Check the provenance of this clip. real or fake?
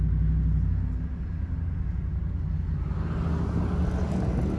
real